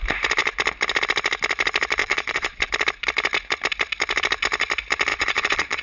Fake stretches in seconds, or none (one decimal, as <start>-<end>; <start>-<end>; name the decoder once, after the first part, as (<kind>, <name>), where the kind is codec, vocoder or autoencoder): 2.0-2.7 (vocoder, Vocos); 5.1-5.8